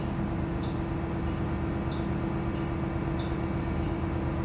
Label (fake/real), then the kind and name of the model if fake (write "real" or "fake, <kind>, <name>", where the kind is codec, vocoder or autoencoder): real